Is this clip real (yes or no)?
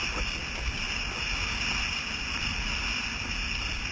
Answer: yes